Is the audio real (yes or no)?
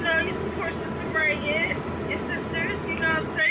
yes